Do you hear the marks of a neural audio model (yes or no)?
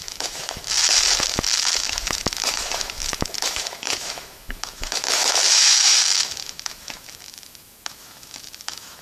yes